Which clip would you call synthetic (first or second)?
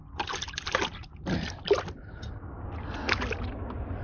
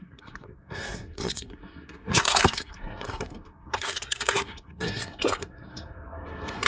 second